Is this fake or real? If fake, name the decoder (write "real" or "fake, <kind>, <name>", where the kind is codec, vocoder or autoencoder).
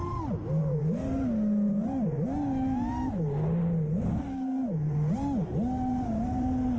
real